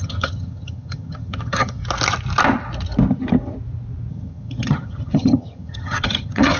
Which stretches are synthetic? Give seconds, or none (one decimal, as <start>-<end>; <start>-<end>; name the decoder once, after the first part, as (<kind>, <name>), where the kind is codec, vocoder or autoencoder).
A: 0.0-1.8 (vocoder, HiFi-GAN); 4.1-6.6